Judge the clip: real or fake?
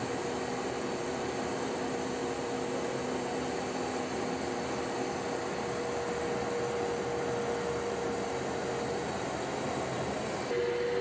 real